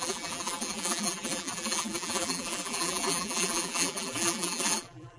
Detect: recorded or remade remade